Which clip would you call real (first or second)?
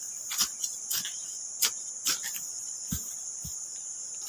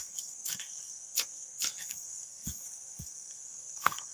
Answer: first